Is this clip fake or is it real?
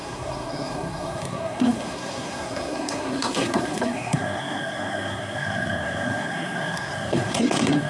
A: fake